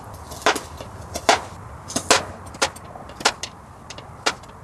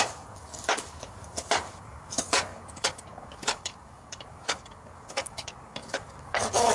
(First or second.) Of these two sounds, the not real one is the second